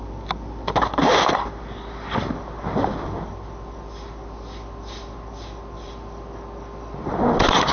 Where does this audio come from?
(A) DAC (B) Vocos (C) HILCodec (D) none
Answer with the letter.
D